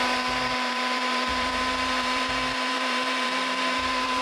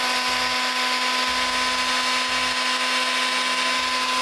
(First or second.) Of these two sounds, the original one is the second